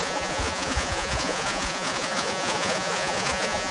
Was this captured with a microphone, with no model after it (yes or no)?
no